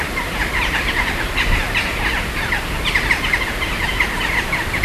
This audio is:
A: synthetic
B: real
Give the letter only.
B